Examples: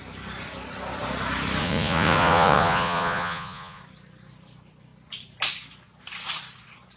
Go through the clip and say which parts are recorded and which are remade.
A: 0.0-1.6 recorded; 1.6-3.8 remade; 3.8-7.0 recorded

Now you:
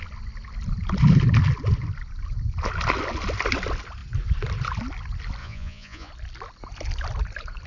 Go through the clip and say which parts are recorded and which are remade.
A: 0.0-5.4 recorded; 5.4-6.1 remade; 6.1-7.7 recorded

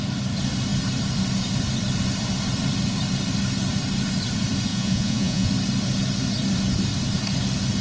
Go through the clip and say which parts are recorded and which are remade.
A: 0.0-4.7 recorded; 4.7-5.5 remade; 5.5-7.8 recorded

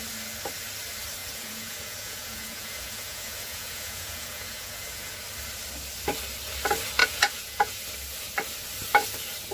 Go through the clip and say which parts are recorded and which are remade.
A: 0.0-1.2 recorded; 1.2-5.2 remade; 5.2-7.0 recorded; 7.0-7.8 remade; 7.8-9.5 recorded

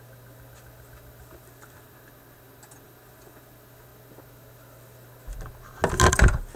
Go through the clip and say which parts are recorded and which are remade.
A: 0.0-6.6 recorded

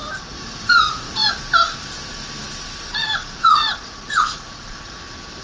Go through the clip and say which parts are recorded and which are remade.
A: 0.0-1.3 remade; 1.3-3.0 recorded; 3.0-5.0 remade; 5.0-5.4 recorded